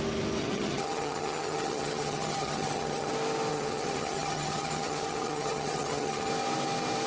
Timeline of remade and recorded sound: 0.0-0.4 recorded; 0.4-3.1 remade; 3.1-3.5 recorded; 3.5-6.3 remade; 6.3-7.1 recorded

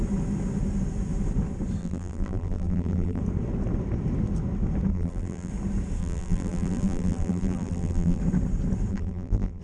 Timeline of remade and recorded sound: 0.0-1.8 recorded; 1.8-3.2 remade; 3.2-4.9 recorded; 4.9-5.5 remade; 5.5-6.0 recorded; 6.0-8.2 remade; 8.2-8.9 recorded; 8.9-9.6 remade

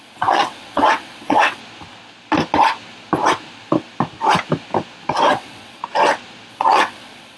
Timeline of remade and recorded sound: 0.0-1.6 remade; 1.6-5.3 recorded; 5.3-5.8 remade; 5.8-6.5 recorded; 6.5-7.4 remade

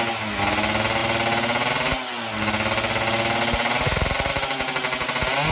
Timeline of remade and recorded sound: 0.0-5.5 recorded

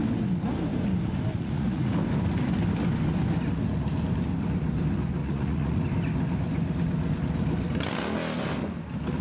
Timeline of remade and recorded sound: 0.0-1.3 recorded; 1.3-2.0 remade; 2.0-5.2 recorded; 5.2-5.8 remade; 5.8-9.2 recorded